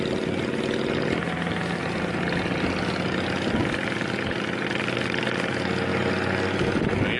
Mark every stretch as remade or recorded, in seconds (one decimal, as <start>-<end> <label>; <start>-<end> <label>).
0.0-7.2 recorded